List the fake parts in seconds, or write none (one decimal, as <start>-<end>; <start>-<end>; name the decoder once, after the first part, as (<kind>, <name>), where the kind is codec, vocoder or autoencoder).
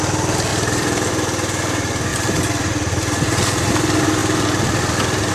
0.5-1.1 (vocoder, BigVGAN v2); 2.1-3.7